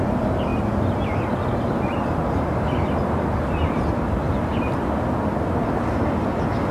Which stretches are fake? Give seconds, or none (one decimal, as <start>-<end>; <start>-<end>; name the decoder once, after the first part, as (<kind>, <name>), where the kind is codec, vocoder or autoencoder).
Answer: none